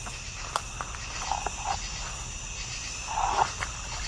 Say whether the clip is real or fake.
real